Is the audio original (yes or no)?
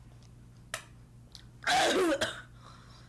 yes